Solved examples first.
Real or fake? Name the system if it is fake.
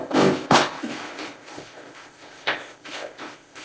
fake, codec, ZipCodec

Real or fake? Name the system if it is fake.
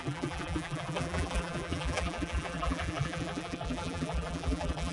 fake, vocoder, BigVGAN v2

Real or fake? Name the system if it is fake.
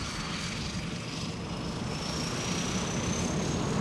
real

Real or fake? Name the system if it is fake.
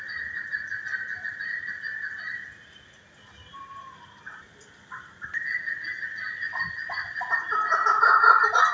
real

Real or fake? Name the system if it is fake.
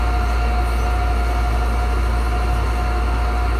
real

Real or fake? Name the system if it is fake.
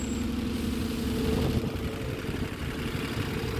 real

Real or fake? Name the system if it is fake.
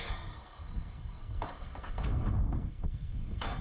fake, codec, SNAC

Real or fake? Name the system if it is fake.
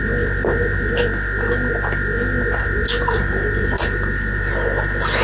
real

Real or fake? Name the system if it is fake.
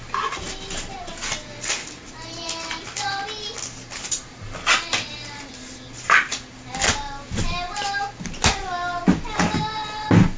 real